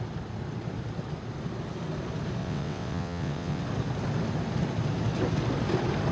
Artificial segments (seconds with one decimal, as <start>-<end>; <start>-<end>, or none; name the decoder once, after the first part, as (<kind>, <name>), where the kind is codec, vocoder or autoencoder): 2.4-3.6 (vocoder, WaveNeXt)